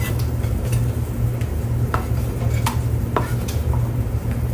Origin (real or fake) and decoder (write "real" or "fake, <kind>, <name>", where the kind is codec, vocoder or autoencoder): real